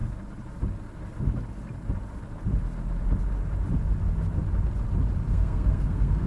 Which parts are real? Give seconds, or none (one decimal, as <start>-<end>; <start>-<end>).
0.0-5.3